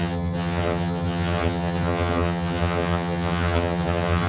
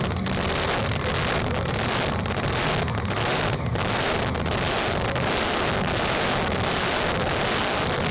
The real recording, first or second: second